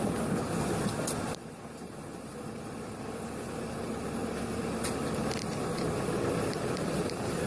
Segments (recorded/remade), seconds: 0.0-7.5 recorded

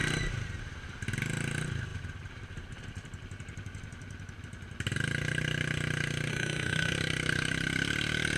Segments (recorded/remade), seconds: 0.0-6.3 recorded; 6.3-6.9 remade; 6.9-8.4 recorded

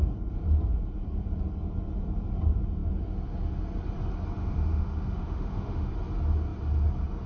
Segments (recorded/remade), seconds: 0.0-4.4 recorded; 4.4-5.9 remade; 5.9-7.3 recorded

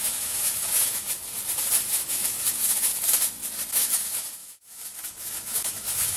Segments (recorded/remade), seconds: 0.0-1.2 remade; 1.2-1.9 recorded; 1.9-2.9 remade; 2.9-3.7 recorded; 3.7-6.2 remade